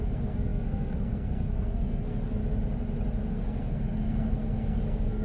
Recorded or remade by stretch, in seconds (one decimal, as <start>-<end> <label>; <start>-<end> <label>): 0.0-2.4 remade; 2.4-3.3 recorded; 3.3-5.2 remade